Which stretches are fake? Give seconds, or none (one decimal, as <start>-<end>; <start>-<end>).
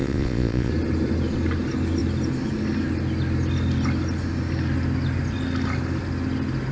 0.0-0.7